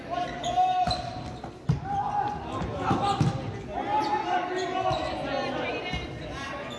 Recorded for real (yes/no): yes